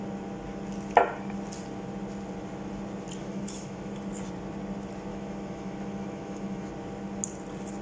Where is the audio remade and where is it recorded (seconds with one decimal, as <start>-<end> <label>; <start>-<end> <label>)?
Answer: 0.0-3.2 recorded; 3.2-3.9 remade; 3.9-5.1 recorded; 5.1-6.7 remade; 6.7-7.8 recorded